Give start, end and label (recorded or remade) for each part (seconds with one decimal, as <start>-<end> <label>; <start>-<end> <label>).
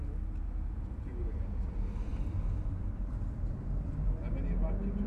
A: 0.0-2.1 recorded; 2.1-4.2 remade; 4.2-5.1 recorded